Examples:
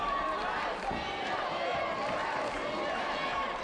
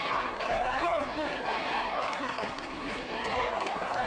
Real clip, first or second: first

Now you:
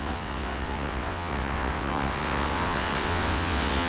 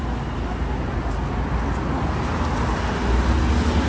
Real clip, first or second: second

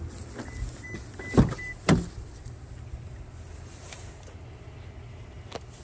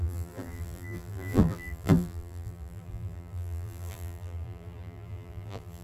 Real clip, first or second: first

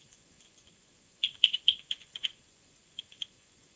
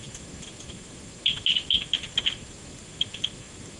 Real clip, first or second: second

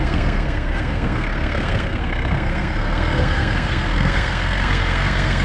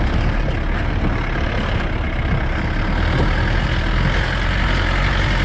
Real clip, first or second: second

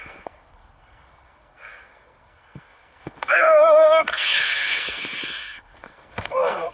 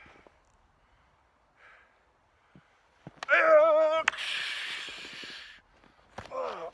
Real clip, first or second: second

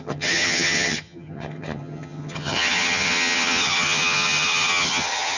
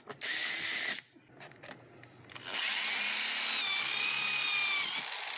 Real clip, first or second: second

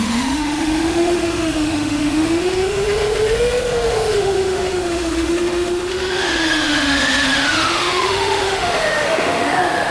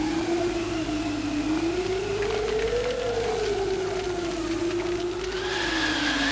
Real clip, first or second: second